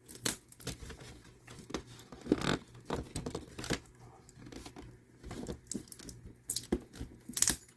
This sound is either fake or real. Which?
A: real